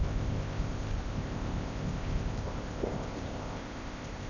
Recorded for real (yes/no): no